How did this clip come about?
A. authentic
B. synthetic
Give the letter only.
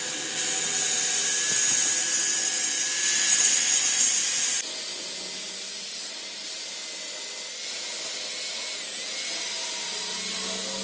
A